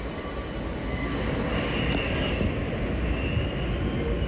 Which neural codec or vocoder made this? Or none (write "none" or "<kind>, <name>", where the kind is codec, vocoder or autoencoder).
none